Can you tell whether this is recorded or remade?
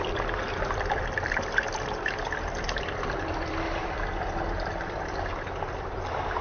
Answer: remade